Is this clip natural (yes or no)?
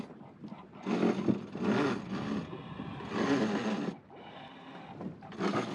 yes